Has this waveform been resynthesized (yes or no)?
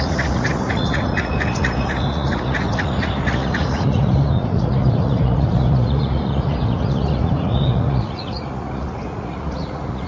yes